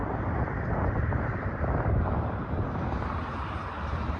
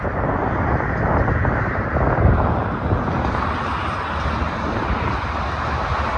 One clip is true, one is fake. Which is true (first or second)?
second